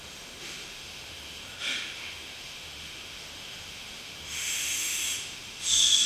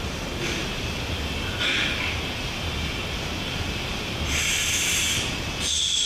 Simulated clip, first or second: first